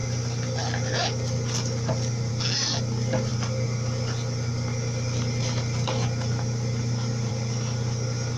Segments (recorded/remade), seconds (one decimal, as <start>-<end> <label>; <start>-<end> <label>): 0.0-8.4 recorded